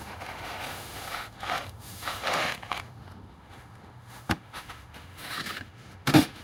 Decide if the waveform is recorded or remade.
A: remade